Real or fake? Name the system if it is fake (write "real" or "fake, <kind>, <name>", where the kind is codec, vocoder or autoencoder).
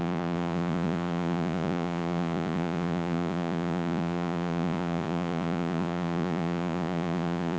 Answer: fake, vocoder, Vocos